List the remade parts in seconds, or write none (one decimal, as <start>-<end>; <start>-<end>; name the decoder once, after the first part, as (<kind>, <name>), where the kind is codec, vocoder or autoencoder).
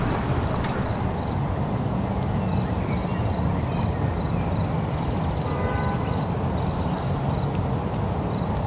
none